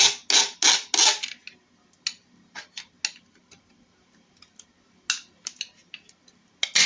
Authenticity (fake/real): real